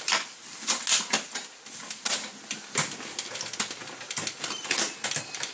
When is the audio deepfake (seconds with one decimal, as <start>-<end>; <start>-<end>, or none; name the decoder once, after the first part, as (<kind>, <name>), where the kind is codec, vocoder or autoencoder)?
none